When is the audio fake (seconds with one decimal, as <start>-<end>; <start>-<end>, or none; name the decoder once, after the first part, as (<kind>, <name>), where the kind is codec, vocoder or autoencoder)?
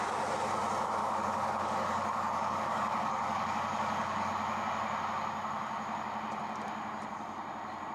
1.0-4.3 (codec, DAC)